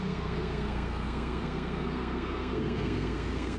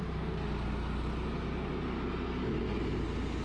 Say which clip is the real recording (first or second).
second